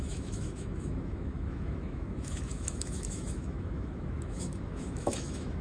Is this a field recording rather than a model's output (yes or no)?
no